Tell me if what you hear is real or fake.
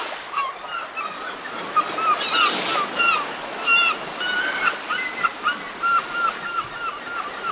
real